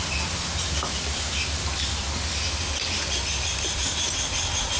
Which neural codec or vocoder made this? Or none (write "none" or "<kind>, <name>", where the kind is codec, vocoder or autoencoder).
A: none